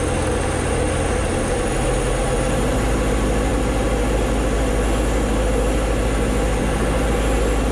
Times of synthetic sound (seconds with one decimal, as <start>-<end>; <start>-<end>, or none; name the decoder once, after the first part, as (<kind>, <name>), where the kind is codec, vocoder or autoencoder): none